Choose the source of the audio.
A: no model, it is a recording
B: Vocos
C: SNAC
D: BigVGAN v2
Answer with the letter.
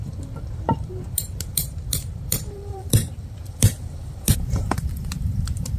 D